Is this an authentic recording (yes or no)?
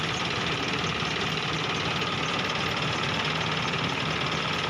yes